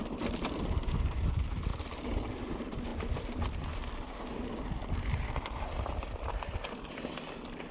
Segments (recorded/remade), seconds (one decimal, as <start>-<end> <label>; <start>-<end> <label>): 0.0-1.7 remade; 1.7-2.5 recorded; 2.5-7.7 remade